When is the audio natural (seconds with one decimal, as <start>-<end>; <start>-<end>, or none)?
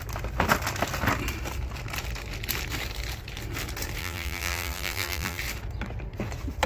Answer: 0.0-4.0; 5.4-6.7